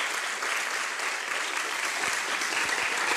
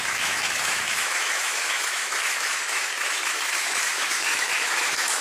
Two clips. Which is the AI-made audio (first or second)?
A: second